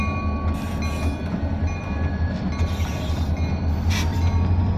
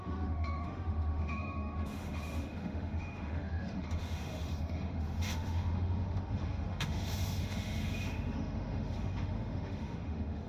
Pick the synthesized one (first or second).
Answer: second